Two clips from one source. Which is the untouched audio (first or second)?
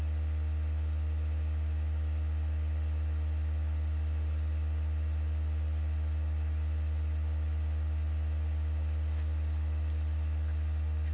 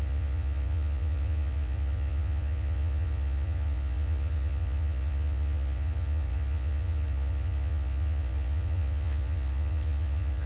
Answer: first